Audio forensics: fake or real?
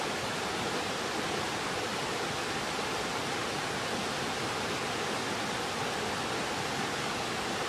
real